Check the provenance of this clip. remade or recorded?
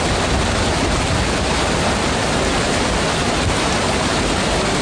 recorded